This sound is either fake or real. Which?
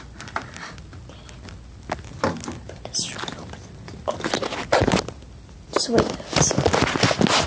real